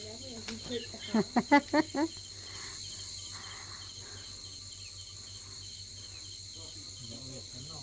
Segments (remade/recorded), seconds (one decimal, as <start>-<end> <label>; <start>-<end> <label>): 0.0-7.8 recorded